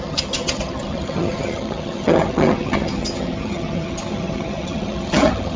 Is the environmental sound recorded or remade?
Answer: remade